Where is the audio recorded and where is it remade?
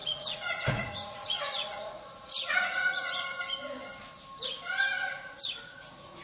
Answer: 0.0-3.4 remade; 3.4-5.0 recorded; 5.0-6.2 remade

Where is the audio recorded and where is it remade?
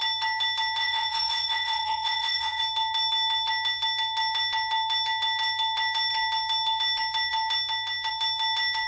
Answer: 0.0-0.8 recorded; 0.8-2.6 remade; 2.6-8.9 recorded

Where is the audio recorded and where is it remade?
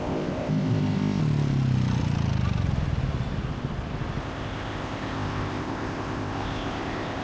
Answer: 0.0-1.2 remade; 1.2-4.2 recorded; 4.2-7.2 remade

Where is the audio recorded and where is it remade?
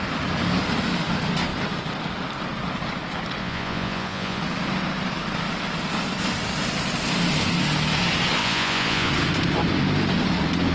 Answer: 0.0-3.4 recorded; 3.4-4.4 remade; 4.4-8.4 recorded; 8.4-9.1 remade; 9.1-10.7 recorded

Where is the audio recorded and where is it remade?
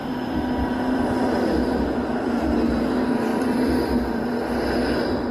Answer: 0.0-2.1 remade; 2.1-3.3 recorded; 3.3-4.2 remade; 4.2-5.3 recorded